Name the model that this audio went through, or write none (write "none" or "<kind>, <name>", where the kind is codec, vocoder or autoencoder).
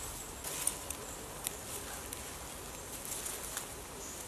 none